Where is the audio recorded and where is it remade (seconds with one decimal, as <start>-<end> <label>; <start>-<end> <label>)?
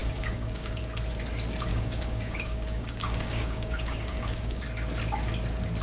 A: 0.0-0.8 remade; 0.8-1.7 recorded; 1.7-4.6 remade; 4.6-5.8 recorded